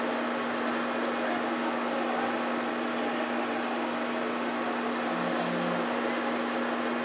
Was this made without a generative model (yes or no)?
yes